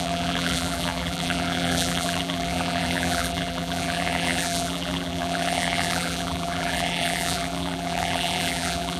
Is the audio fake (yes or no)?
yes